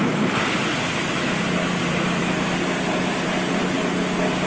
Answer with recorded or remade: recorded